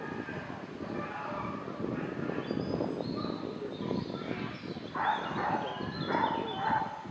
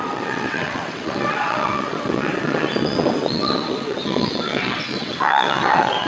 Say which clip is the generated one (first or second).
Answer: second